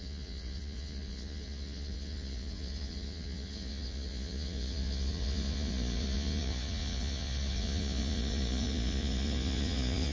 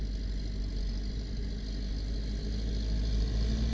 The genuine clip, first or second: second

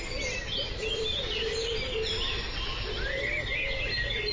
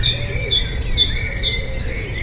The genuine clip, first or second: first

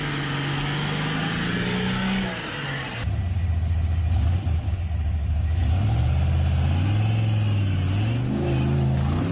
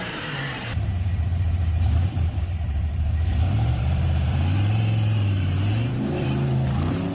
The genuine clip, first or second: first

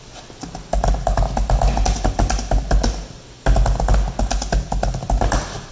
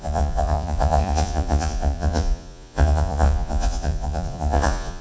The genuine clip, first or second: first